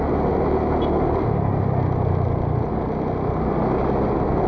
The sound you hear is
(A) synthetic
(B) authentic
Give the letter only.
B